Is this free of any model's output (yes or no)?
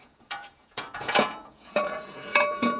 no